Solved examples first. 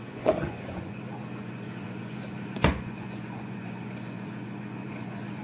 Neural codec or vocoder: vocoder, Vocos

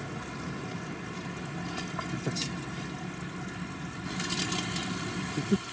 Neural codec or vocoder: none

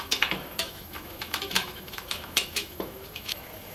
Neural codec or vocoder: autoencoder, DAC-VAE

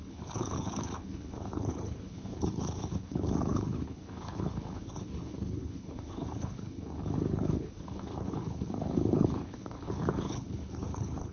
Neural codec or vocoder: codec, HILCodec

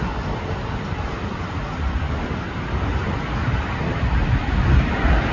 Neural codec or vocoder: none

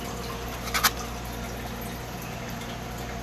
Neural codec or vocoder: none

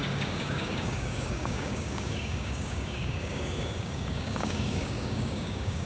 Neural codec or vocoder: codec, DAC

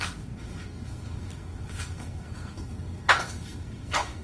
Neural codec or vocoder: codec, SNAC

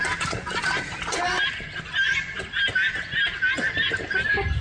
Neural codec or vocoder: none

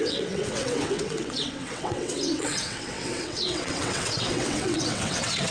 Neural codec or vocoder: vocoder, WaveNeXt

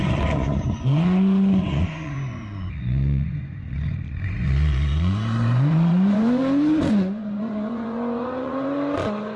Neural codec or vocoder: vocoder, Vocos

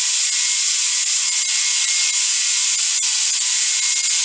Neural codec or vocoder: none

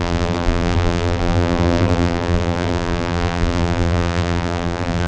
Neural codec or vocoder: vocoder, BigVGAN v2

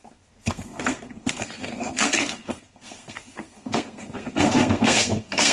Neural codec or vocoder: codec, SNAC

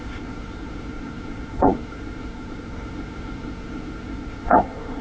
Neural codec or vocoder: codec, SNAC